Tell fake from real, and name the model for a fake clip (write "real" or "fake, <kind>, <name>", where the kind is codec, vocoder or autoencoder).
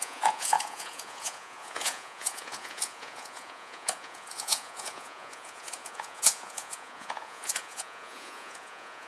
fake, vocoder, Vocos